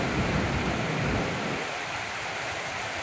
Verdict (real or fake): fake